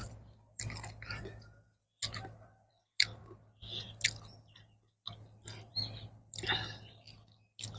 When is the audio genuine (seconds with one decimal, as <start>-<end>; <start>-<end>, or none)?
0.0-7.8